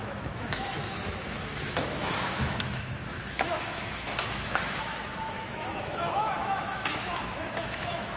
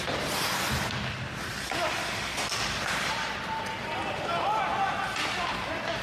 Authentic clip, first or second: second